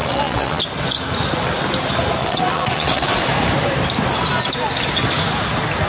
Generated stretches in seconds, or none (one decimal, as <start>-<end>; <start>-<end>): 0.0-0.6; 2.2-3.2